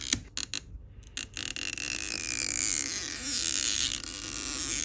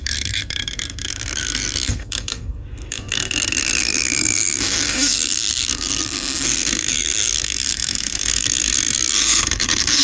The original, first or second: first